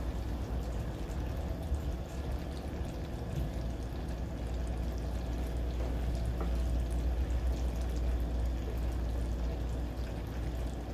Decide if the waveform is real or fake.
real